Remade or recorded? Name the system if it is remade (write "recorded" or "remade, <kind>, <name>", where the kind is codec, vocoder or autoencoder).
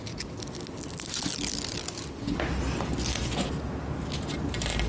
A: recorded